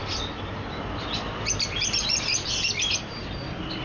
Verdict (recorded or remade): remade